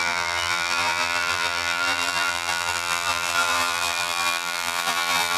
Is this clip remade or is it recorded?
remade